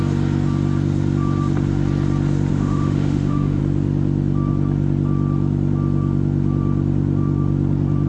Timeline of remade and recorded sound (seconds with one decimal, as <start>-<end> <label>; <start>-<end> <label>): 0.0-2.5 recorded; 2.5-3.6 remade; 3.6-8.1 recorded